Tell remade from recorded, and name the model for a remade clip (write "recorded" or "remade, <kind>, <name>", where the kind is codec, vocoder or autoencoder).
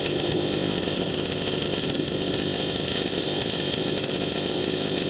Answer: remade, codec, ZipCodec